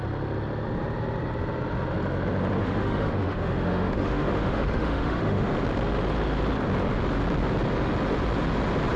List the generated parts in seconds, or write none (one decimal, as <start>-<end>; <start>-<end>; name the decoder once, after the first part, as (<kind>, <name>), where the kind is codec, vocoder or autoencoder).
2.6-5.5 (autoencoder, DAC-VAE)